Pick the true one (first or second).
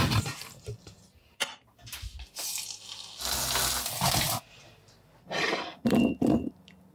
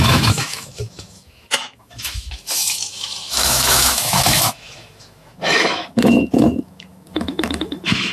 first